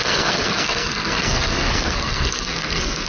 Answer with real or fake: fake